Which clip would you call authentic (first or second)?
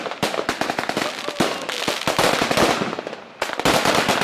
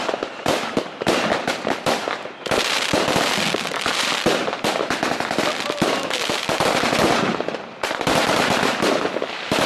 first